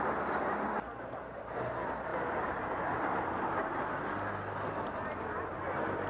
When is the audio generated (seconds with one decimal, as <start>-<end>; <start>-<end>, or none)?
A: none